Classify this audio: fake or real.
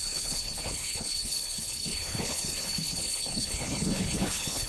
fake